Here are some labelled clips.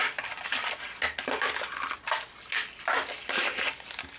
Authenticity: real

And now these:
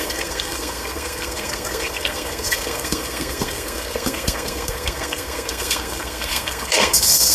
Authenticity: fake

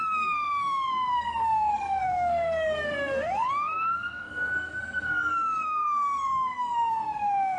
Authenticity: fake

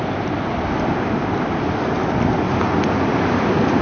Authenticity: real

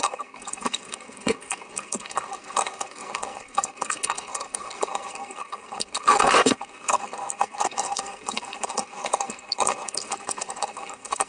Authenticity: fake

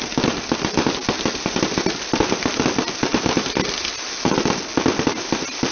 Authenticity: real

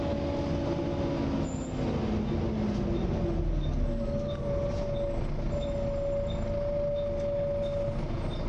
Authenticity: real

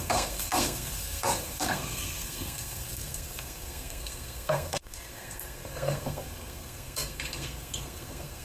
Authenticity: fake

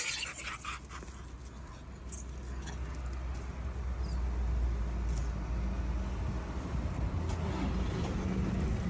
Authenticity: real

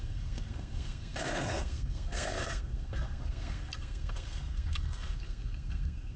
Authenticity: fake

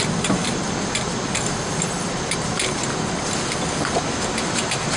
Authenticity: real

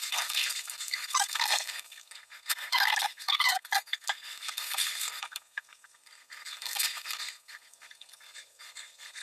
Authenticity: fake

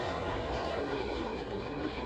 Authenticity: fake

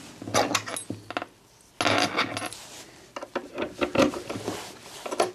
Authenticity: real